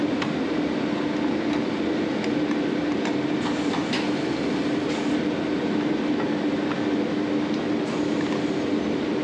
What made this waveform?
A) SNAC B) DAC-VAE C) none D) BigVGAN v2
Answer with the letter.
C